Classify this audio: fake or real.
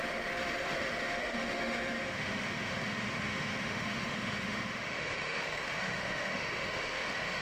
fake